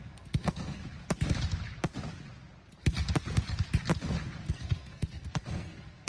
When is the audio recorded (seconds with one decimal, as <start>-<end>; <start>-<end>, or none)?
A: 0.8-4.5

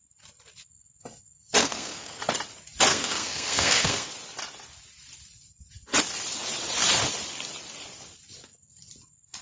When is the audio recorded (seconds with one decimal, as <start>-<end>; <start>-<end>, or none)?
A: 0.0-1.6; 2.2-2.9; 4.1-9.4

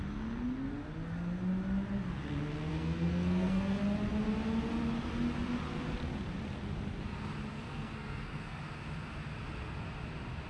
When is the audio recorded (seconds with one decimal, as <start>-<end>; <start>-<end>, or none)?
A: 0.0-2.7; 3.8-7.5; 8.6-10.5

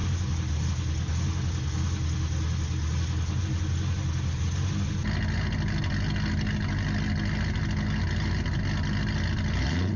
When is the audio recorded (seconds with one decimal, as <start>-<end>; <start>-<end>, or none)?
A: 0.0-10.0

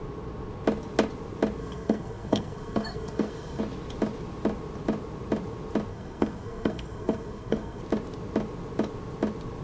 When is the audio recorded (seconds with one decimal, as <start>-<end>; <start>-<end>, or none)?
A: 0.0-1.6; 3.6-5.9; 7.8-9.6

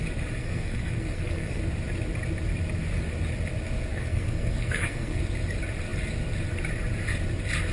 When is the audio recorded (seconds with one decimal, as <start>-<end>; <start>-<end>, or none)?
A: 0.0-0.4; 1.6-3.9; 5.2-7.7

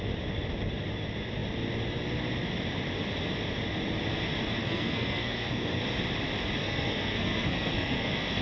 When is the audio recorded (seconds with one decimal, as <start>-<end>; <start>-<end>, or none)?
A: 0.0-4.6; 5.8-6.6